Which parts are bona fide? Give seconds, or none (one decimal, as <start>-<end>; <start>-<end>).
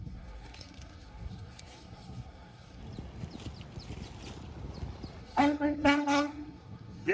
2.8-5.2